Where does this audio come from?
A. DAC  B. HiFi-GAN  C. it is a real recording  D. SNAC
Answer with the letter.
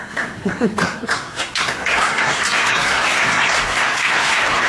D